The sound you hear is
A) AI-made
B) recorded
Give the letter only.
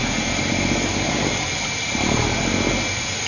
B